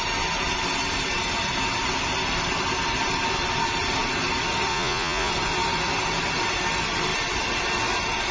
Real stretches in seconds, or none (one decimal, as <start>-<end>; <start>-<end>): 0.0-4.7; 5.3-8.3